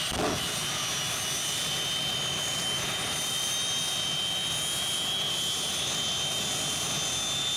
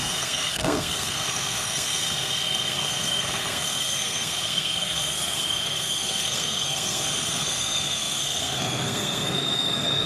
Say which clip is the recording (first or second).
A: first